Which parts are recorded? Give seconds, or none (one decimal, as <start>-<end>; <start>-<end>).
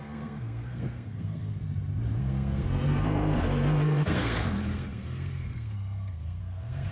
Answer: 1.6-2.2